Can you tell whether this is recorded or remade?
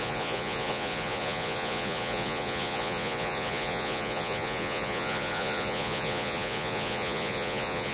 remade